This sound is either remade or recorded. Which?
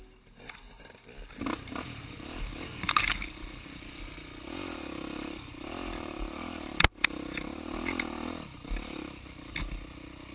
recorded